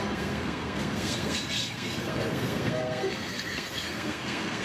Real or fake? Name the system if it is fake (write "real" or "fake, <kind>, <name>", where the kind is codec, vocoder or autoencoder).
fake, codec, SNAC